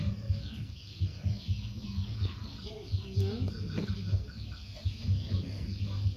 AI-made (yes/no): yes